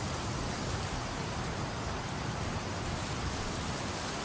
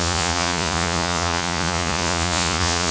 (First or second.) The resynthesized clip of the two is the second